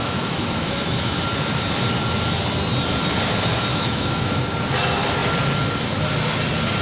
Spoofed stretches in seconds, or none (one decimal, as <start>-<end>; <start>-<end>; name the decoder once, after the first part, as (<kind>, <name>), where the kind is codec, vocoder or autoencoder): 0.0-1.2 (autoencoder, DAC-VAE); 3.7-4.4